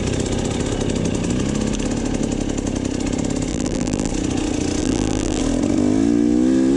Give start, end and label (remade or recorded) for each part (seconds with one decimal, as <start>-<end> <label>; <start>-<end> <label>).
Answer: 0.0-3.5 recorded; 3.5-4.1 remade; 4.1-4.8 recorded; 4.8-5.4 remade; 5.4-6.8 recorded